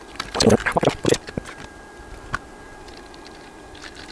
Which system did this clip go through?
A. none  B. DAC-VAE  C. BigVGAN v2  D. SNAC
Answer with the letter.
C